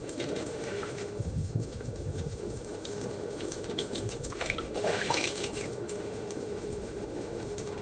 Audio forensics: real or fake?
fake